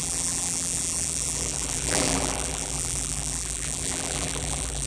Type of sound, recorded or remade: remade